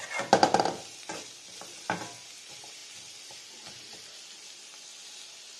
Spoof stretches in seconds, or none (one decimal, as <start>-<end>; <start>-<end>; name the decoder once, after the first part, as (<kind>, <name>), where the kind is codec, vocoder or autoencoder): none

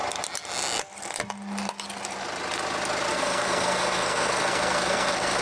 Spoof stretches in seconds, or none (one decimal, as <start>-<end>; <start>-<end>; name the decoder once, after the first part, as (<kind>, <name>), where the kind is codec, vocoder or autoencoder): 3.1-5.4 (codec, SNAC)

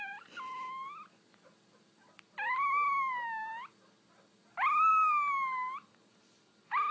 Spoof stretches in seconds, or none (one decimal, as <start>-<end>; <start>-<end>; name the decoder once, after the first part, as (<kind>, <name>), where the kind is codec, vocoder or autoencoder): none